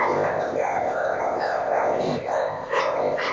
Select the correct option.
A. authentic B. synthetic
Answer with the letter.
B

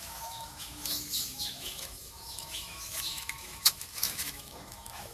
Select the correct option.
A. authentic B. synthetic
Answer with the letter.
B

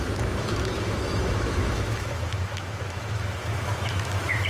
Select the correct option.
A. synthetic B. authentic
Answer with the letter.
A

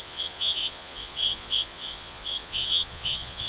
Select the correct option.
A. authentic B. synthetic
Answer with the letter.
B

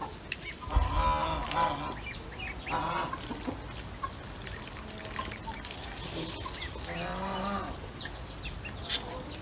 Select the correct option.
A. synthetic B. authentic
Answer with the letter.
B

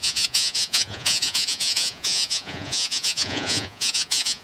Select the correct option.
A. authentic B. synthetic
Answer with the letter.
B